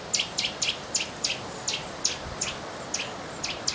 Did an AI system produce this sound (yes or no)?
no